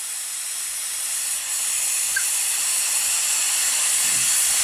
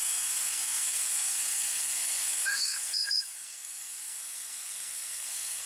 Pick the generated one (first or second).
second